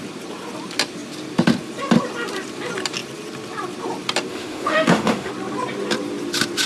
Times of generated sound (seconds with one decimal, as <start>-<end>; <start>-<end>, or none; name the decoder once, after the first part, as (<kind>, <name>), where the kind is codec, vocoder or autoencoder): 4.3-5.3 (autoencoder, DAC-VAE)